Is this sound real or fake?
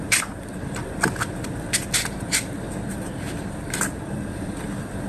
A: fake